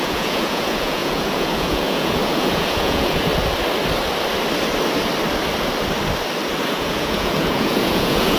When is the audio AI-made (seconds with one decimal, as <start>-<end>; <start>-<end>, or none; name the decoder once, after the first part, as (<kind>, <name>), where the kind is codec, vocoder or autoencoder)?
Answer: 0.0-3.3 (vocoder, Vocos); 6.7-8.4